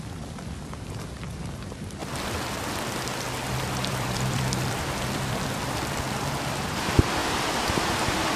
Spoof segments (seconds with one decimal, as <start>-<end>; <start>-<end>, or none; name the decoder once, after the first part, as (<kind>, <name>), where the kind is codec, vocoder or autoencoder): 0.0-2.0 (vocoder, BigVGAN v2); 3.5-8.4